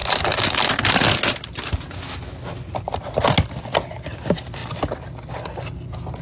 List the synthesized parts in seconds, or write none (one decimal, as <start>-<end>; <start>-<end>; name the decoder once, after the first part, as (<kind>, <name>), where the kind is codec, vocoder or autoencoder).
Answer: none